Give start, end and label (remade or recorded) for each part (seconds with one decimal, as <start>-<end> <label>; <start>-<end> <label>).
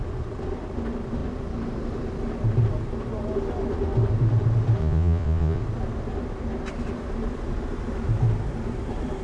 0.0-4.8 recorded; 4.8-5.6 remade; 5.6-9.2 recorded